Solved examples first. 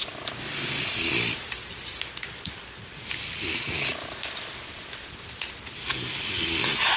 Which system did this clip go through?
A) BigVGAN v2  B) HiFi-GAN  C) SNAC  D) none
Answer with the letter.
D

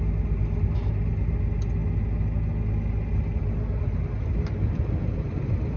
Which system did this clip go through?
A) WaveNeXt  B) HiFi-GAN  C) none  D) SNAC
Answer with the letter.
C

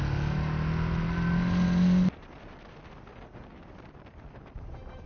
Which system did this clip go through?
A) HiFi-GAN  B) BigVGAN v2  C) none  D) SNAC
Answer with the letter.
C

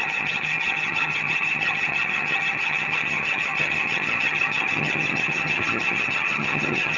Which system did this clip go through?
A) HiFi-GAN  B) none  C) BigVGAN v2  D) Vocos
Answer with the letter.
A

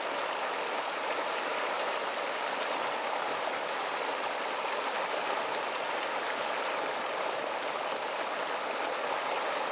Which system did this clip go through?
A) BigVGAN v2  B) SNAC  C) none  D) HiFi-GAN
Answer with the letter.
C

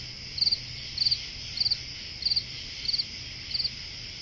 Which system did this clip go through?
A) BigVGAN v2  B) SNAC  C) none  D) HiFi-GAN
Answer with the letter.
C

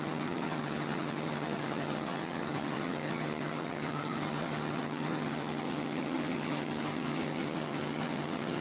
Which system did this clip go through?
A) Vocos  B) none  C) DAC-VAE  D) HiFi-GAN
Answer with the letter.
D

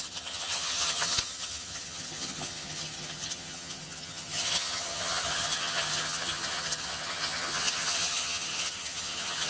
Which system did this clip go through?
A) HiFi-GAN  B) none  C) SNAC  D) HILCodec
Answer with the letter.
A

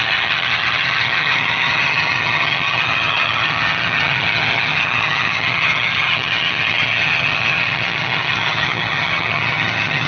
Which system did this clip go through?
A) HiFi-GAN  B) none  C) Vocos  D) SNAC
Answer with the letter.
A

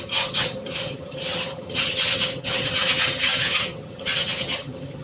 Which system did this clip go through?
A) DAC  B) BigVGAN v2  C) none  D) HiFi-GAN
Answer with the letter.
D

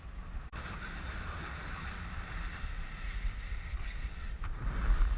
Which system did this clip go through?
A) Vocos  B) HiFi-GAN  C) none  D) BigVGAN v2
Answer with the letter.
C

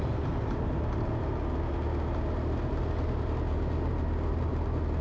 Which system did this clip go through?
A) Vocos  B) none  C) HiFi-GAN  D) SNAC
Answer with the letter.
B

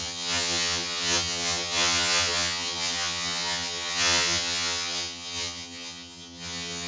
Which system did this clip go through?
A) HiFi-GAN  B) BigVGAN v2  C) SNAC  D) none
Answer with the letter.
A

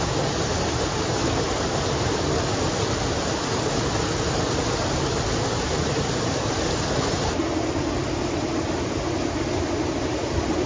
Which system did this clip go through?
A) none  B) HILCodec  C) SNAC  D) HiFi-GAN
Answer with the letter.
A